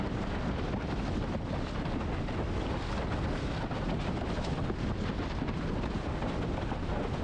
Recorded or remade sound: recorded